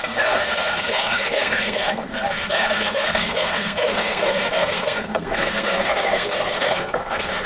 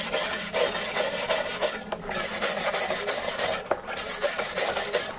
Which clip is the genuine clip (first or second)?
second